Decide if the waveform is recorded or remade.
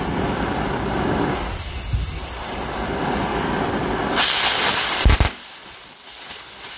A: recorded